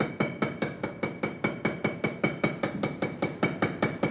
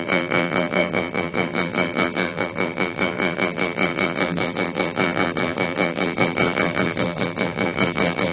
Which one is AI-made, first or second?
second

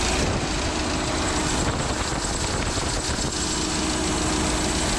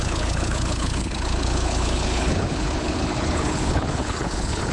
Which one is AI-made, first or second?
second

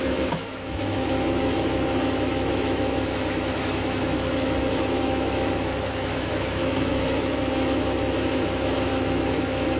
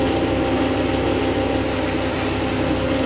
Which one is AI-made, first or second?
first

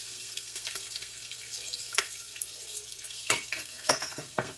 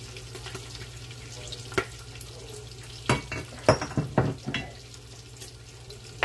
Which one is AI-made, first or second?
first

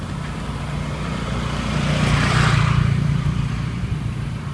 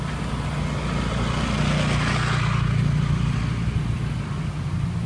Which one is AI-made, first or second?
first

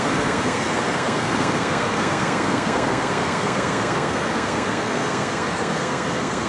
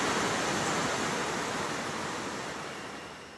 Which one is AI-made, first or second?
first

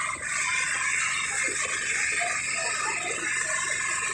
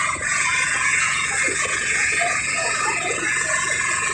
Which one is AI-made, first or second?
second